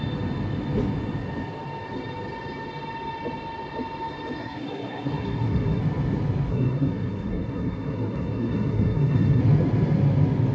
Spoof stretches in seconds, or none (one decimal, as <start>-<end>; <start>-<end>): 4.4-5.8; 6.5-9.4